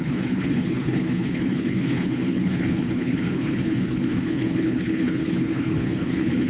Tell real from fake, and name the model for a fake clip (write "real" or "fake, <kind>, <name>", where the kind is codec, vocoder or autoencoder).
fake, codec, HILCodec